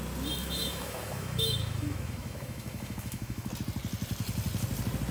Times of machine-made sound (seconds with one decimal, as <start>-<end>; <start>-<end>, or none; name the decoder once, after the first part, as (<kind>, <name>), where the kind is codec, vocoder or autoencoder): 0.4-3.5 (autoencoder, DAC-VAE)